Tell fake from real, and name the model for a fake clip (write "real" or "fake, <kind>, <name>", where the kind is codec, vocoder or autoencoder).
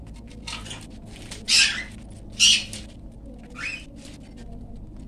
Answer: real